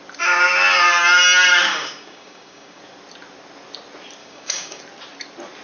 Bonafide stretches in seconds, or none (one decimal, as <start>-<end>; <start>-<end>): 0.0-1.7; 2.8-4.2; 4.8-5.6